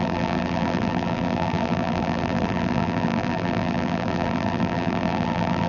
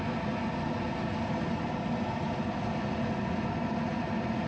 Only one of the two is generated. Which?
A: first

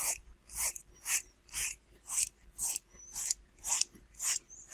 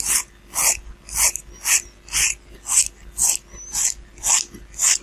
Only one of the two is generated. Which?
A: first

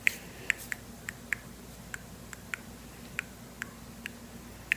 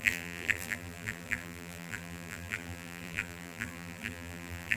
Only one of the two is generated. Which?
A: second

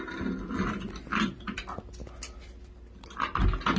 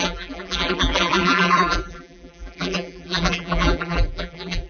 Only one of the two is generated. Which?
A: second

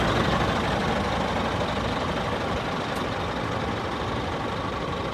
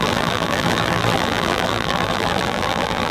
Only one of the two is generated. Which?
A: second